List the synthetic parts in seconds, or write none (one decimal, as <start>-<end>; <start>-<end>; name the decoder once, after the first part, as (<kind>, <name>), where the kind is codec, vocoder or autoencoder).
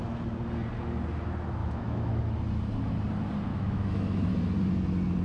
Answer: 1.6-2.2 (autoencoder, DAC-VAE); 3.5-4.3